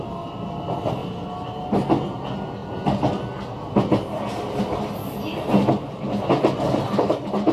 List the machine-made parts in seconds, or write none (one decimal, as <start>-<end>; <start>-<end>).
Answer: none